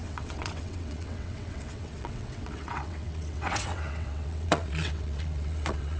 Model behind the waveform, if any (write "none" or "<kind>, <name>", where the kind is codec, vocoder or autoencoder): vocoder, WaveNeXt